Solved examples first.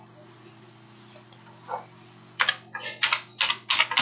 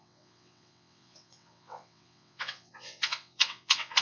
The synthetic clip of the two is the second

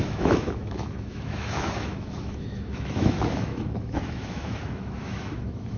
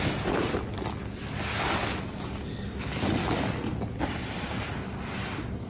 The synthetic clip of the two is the first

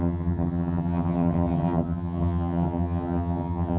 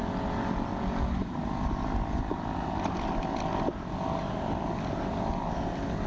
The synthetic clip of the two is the first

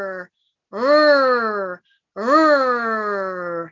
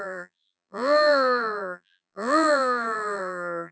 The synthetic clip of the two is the second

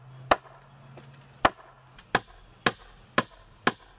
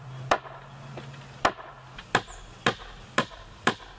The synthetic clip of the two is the second